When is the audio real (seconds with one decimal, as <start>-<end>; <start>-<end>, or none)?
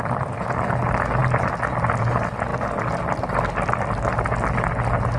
0.0-5.2